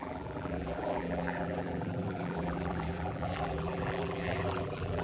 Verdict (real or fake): fake